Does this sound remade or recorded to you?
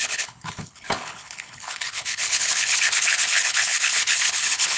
remade